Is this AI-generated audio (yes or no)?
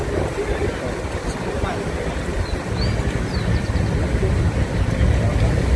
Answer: no